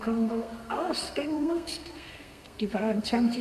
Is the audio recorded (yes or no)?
no